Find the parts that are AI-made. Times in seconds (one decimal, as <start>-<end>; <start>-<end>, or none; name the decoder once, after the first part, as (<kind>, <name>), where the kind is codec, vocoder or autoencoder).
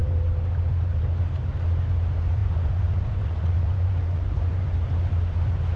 2.4-4.7 (vocoder, Vocos)